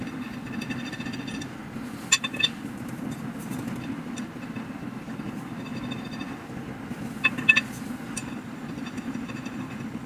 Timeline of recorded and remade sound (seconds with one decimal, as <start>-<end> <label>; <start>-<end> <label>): 0.0-8.2 recorded; 8.2-10.1 remade